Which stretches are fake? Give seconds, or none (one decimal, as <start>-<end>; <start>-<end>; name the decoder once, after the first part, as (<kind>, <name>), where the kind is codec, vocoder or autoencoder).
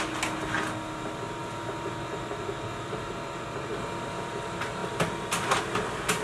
none